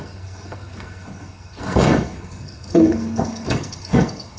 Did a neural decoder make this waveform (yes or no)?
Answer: yes